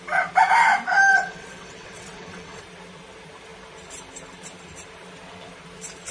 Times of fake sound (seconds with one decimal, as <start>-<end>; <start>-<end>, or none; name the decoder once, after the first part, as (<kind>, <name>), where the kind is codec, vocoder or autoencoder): 1.1-2.6 (vocoder, WaveNeXt)